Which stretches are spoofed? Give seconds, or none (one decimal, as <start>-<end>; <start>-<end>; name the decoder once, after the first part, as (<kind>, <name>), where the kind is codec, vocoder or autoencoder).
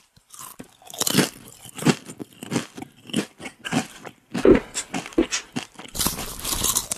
0.0-4.3 (vocoder, BigVGAN v2); 5.8-7.0